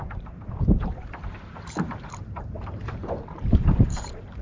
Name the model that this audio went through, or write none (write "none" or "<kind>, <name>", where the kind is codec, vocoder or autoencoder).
vocoder, BigVGAN v2